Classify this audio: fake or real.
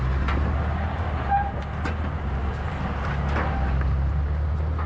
real